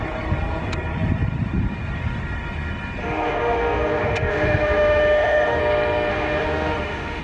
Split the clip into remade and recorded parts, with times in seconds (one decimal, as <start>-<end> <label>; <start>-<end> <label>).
0.0-3.0 recorded; 3.0-5.6 remade; 5.6-6.1 recorded; 6.1-7.2 remade

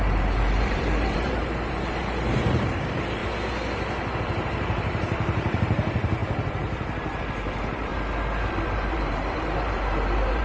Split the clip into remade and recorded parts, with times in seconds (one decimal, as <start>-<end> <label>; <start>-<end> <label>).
0.0-3.2 remade; 3.2-4.2 recorded; 4.2-7.9 remade; 7.9-8.5 recorded; 8.5-10.4 remade

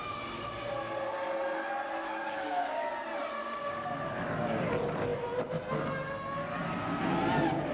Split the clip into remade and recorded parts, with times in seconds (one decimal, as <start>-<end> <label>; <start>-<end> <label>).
0.0-2.2 recorded; 2.2-2.9 remade; 2.9-3.4 recorded; 3.4-3.9 remade; 3.9-7.7 recorded

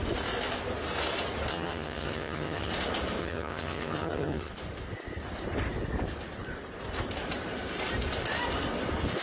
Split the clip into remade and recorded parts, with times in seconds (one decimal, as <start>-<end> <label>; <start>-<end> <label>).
0.0-1.5 recorded; 1.5-2.7 remade; 2.7-3.2 recorded; 3.2-4.5 remade; 4.5-9.2 recorded

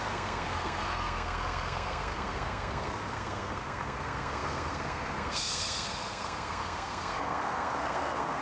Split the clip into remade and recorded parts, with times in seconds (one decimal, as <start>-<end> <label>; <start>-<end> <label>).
0.0-8.4 remade

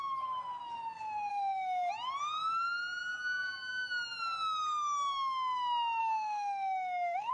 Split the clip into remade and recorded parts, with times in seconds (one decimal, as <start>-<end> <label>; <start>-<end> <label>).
0.0-1.3 recorded; 1.3-1.9 remade; 1.9-6.0 recorded; 6.0-7.3 remade

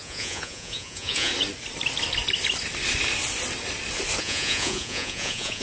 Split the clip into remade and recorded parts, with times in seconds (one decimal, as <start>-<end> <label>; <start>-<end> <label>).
0.0-1.3 remade; 1.3-4.2 recorded; 4.2-5.6 remade